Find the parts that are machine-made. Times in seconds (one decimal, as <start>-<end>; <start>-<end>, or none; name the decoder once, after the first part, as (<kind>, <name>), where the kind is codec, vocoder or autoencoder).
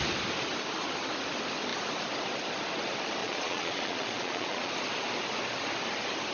3.2-4.7 (vocoder, Vocos)